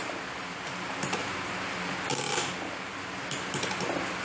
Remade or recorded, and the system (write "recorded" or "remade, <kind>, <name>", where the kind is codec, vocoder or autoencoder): recorded